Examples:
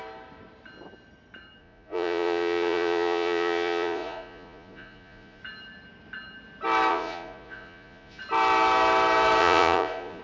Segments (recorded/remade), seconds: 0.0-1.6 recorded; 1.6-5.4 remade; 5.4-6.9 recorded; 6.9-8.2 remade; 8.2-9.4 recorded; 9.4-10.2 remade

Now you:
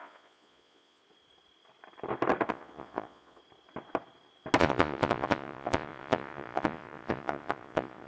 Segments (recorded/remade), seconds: 0.0-1.0 remade; 1.0-2.5 recorded; 2.5-3.4 remade; 3.4-4.6 recorded; 4.6-8.1 remade

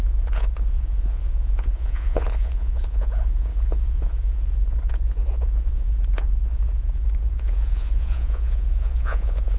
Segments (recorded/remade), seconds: 0.0-9.6 remade

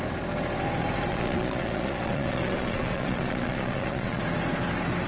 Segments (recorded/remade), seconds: 0.0-1.1 recorded; 1.1-4.2 remade; 4.2-5.1 recorded

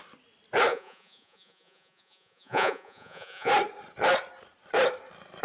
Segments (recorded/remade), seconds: 0.0-0.7 recorded; 0.7-3.5 remade; 3.5-5.4 recorded

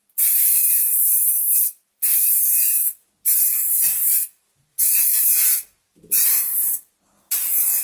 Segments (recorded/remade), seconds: 0.0-1.0 recorded; 1.0-3.1 remade; 3.1-4.7 recorded; 4.7-7.0 remade; 7.0-7.8 recorded

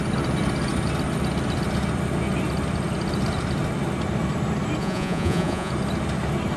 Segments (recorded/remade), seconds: 0.0-4.8 recorded; 4.8-5.7 remade; 5.7-6.6 recorded